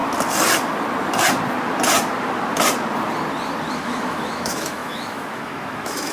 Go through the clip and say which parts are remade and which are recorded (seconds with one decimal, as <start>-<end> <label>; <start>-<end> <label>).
0.0-3.7 recorded; 3.7-6.1 remade